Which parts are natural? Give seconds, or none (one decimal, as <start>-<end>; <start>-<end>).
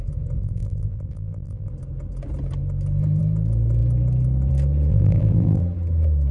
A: 0.0-0.4; 1.7-4.9; 5.6-6.3